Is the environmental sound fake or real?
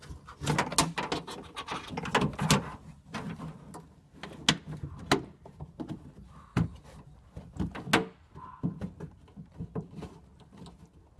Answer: real